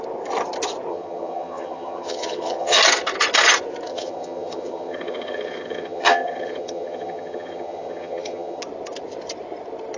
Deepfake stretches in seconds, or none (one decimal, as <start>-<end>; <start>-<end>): 0.9-2.8; 3.9-8.6